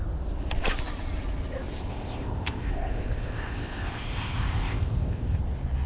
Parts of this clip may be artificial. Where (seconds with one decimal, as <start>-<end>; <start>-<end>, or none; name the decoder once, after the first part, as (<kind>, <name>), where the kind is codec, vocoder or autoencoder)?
1.9-5.4 (codec, ZipCodec)